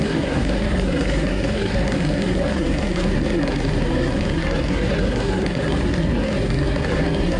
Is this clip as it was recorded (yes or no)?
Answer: no